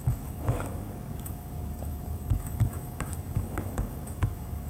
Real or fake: fake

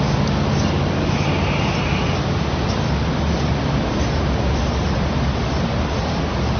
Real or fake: real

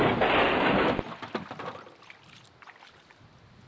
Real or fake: real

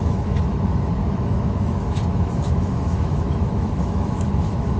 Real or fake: fake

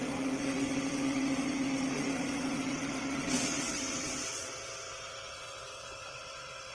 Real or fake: fake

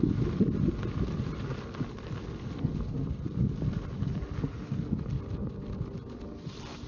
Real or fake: real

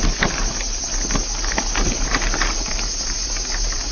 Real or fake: real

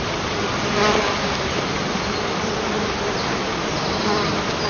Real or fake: real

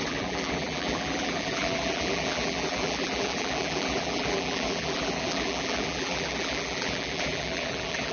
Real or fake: fake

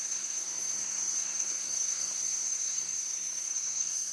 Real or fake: fake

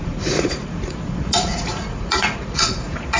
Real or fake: fake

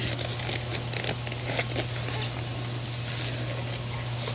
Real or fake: real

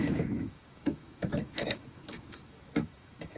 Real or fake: fake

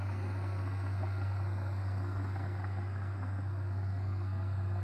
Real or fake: fake